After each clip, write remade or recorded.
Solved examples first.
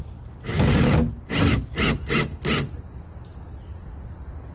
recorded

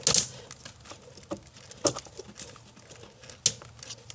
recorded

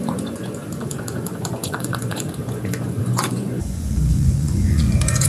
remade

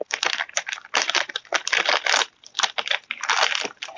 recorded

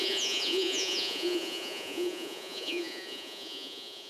remade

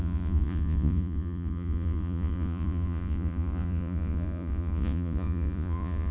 remade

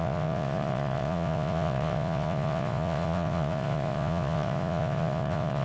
remade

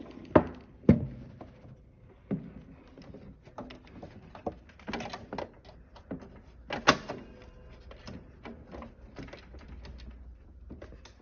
recorded